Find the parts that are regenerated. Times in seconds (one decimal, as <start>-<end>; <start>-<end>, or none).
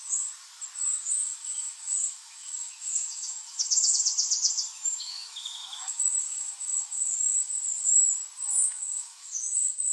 1.0-3.9; 4.7-7.5; 8.6-9.9